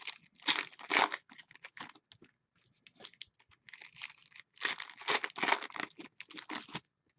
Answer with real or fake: real